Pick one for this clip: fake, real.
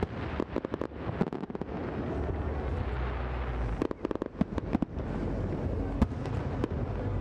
real